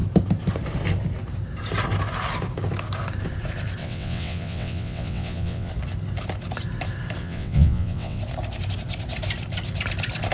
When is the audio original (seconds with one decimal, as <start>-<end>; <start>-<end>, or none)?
0.0-3.8; 5.7-7.2; 8.2-10.3